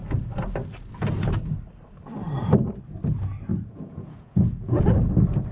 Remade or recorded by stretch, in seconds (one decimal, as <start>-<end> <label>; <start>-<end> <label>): 0.0-3.5 recorded; 3.5-4.8 remade; 4.8-5.5 recorded